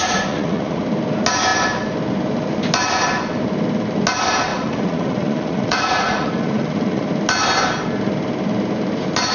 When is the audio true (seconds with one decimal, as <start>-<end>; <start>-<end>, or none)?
0.8-4.5; 7.1-9.3